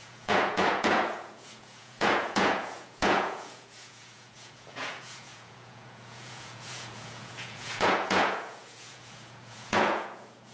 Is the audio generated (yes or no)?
yes